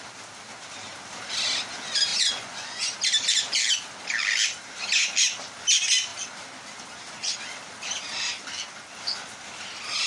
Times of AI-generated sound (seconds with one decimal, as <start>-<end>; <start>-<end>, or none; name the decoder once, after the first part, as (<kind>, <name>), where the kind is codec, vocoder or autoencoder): 2.1-2.9 (vocoder, Vocos)